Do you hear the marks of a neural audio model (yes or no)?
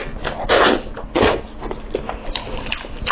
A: no